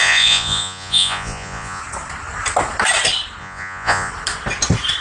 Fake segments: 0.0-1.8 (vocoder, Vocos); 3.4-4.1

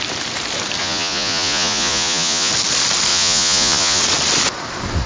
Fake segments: 0.8-2.5 (vocoder, Vocos); 3.1-4.0

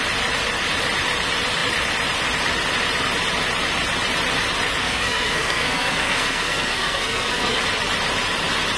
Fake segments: 4.8-7.6 (codec, SNAC)

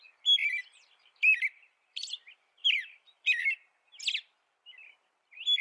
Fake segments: 0.4-2.1 (vocoder, BigVGAN v2); 2.6-4.1

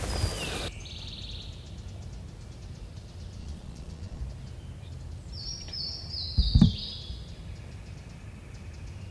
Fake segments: 3.4-4.2 (vocoder, Vocos)

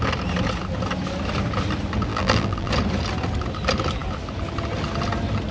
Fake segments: 2.1-2.7 (vocoder, BigVGAN v2)